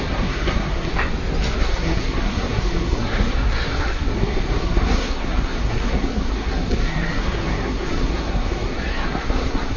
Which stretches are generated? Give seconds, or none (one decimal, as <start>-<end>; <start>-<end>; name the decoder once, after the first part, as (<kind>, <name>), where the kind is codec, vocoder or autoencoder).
0.0-0.9 (codec, SNAC); 1.6-9.8